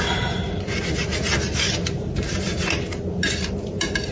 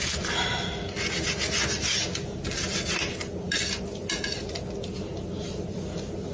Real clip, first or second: second